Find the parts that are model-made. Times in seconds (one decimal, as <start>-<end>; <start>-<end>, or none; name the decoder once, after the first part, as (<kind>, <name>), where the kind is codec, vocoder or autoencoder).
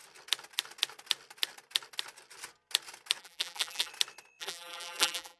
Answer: 3.2-3.9 (vocoder, BigVGAN v2); 4.4-5.4